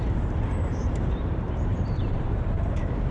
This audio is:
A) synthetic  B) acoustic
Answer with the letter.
A